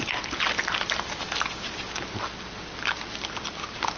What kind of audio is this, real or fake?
real